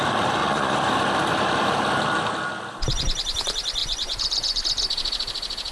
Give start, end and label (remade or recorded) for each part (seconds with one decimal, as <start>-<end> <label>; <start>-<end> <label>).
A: 0.0-0.4 recorded; 0.4-0.9 remade; 0.9-3.8 recorded; 3.8-4.6 remade; 4.6-5.7 recorded